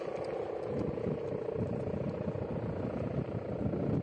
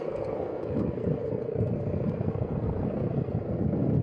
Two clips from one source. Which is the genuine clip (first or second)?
first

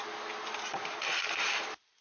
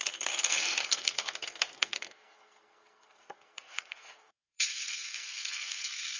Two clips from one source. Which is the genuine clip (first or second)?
first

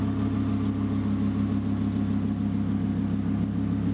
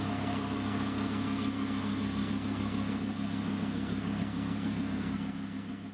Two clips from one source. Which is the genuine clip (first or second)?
first